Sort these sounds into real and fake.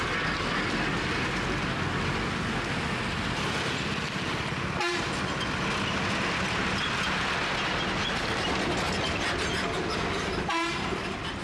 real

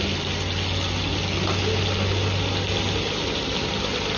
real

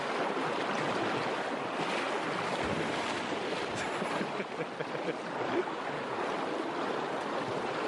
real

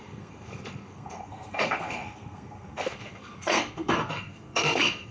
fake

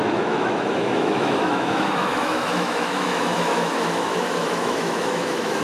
fake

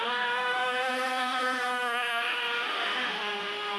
fake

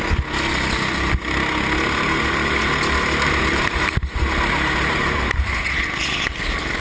real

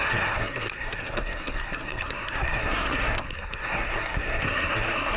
fake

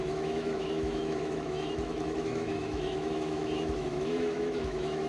fake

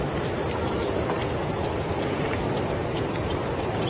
fake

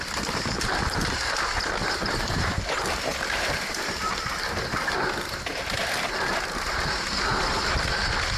real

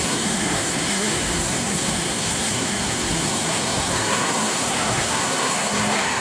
fake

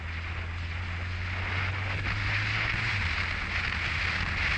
real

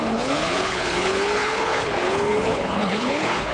fake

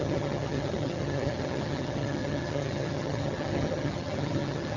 fake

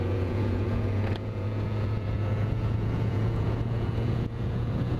fake